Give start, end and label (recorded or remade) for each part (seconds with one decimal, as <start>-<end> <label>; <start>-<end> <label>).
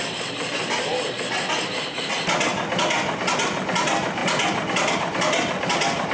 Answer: 0.0-6.1 recorded